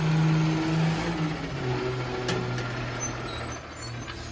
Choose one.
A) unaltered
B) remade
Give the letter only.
A